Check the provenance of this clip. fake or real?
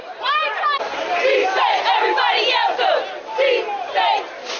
real